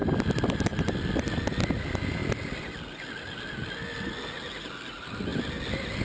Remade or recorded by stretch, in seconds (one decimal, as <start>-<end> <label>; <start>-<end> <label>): 0.0-6.0 recorded